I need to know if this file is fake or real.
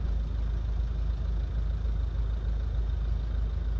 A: real